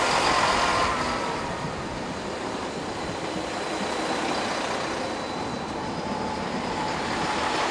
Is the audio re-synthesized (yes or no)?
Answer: no